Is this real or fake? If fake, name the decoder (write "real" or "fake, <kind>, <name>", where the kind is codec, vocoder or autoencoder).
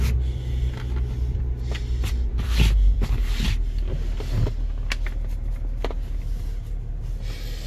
real